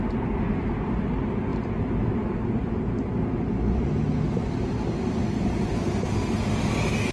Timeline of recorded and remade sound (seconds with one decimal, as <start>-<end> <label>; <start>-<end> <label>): 0.0-7.1 recorded